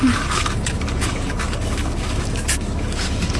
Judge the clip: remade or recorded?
remade